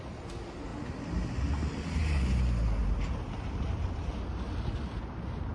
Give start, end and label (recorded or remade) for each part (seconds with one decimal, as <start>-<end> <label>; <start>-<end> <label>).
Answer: 0.0-5.5 recorded